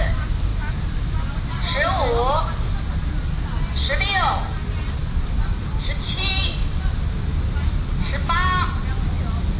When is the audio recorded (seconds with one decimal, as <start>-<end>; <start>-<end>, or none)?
0.0-9.6